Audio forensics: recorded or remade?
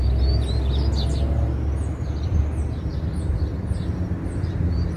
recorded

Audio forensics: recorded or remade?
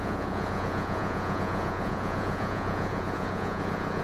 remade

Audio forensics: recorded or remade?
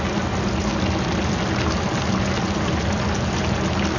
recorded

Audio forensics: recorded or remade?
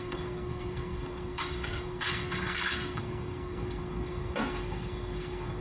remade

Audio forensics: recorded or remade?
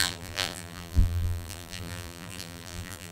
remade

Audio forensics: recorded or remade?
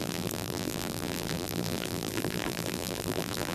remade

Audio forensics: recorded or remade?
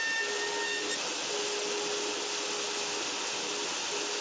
recorded